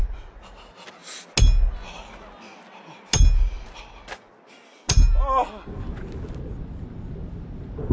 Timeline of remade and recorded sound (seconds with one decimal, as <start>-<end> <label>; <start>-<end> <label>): 0.0-7.9 recorded